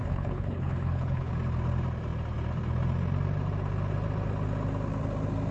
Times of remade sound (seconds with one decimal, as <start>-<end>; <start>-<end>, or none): 0.0-1.3